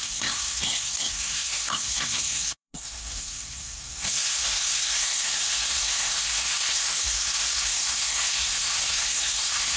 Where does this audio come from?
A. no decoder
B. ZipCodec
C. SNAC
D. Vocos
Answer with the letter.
C